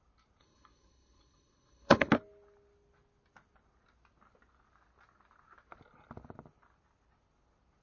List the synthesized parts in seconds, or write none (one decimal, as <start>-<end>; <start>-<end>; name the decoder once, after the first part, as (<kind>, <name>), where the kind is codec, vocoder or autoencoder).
0.4-2.1 (codec, HILCodec)